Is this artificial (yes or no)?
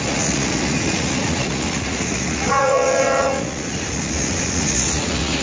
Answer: yes